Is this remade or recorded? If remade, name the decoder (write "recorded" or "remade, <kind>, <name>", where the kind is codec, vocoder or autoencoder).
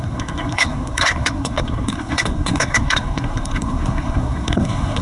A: remade, codec, SNAC